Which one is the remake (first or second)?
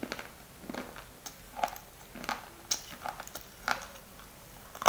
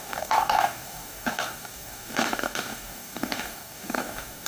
second